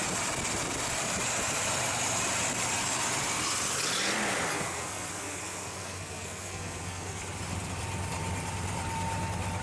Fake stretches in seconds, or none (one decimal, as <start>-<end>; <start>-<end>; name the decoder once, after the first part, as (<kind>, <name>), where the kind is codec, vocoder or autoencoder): 4.5-7.2 (codec, SNAC)